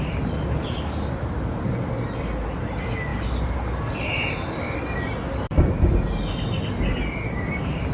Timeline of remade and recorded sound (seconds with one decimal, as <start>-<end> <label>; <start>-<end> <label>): 0.0-7.9 recorded